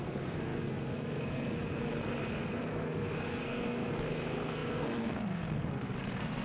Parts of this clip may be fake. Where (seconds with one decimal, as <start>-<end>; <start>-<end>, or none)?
0.0-6.4